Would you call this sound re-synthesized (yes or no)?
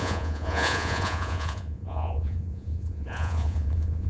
yes